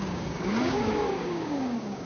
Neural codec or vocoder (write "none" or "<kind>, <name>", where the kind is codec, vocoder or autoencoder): codec, DAC